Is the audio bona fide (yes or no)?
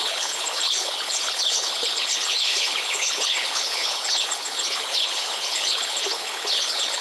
no